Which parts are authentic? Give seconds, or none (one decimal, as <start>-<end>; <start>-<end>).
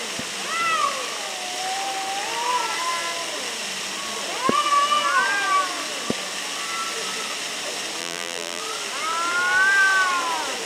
0.0-8.0; 8.6-10.7